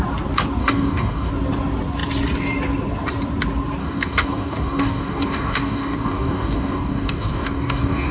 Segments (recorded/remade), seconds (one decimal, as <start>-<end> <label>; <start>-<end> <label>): 0.0-0.6 recorded; 0.6-1.3 remade; 1.3-3.8 recorded; 3.8-8.1 remade